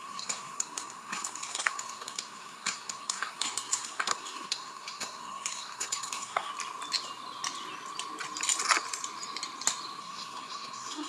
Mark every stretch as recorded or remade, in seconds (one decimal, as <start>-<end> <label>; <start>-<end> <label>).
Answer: 0.0-6.5 remade; 6.5-10.0 recorded; 10.0-11.1 remade